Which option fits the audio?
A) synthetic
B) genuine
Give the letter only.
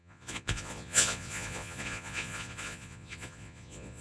A